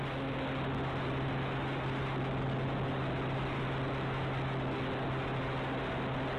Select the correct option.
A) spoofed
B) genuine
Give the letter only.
B